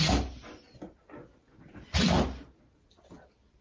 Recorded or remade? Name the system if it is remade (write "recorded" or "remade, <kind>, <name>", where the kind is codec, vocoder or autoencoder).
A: recorded